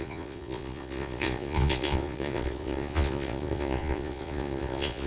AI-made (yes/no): yes